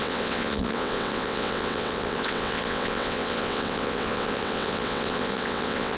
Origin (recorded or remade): remade